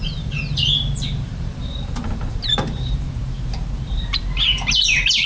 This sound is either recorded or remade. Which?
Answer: remade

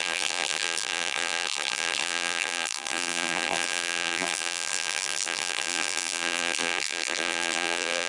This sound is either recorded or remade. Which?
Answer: remade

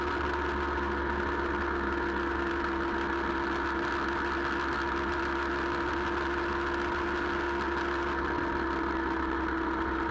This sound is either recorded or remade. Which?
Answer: recorded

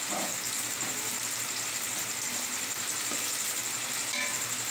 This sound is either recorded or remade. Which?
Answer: remade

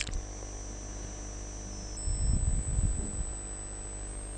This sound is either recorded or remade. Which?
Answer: recorded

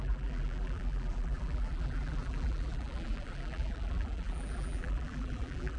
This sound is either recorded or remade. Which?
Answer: remade